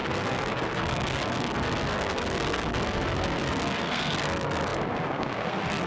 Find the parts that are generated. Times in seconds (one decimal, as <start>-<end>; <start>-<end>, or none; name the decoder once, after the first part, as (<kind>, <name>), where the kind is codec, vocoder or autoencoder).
0.0-5.9 (codec, SNAC)